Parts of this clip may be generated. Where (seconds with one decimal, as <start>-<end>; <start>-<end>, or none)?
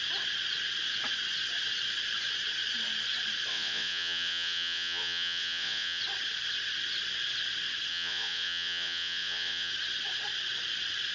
3.5-6.0; 7.9-9.7